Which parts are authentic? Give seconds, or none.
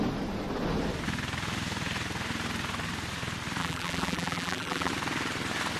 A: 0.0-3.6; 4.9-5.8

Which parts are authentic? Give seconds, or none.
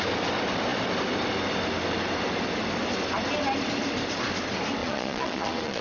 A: 0.0-4.8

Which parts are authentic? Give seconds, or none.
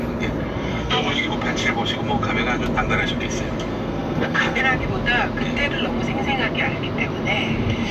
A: 0.0-0.7; 1.3-3.7; 4.6-7.9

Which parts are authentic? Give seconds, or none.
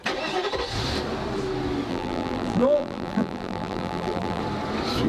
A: 0.0-1.9; 4.4-5.1